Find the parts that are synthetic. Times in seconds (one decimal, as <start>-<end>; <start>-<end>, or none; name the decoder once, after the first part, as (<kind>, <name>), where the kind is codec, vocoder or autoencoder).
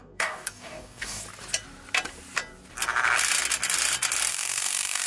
0.0-1.2 (codec, DAC); 4.3-5.1